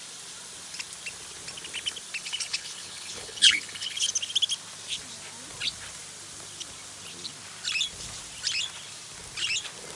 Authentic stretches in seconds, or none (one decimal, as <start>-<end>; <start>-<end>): 0.0-2.2; 4.1-10.0